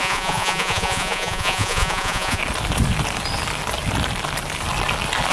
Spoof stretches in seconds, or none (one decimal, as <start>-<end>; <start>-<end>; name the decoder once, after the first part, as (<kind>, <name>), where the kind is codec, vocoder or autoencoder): 0.0-2.4 (vocoder, Vocos)